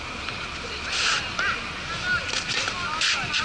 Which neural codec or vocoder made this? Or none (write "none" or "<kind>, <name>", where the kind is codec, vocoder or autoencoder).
none